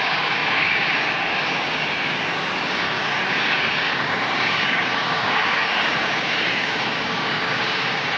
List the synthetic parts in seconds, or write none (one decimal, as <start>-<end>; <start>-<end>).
0.0-8.2